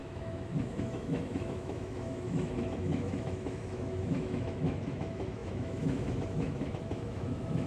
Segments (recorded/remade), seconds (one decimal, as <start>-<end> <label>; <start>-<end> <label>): 0.0-7.7 remade